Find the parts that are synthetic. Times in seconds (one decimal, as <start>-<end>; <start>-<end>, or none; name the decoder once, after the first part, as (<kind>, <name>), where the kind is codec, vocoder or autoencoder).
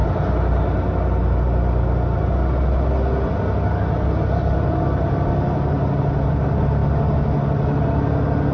none